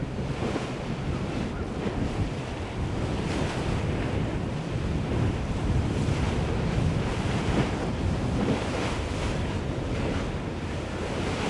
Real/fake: real